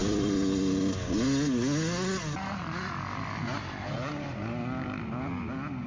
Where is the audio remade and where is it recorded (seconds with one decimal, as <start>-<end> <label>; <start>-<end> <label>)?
0.0-5.9 recorded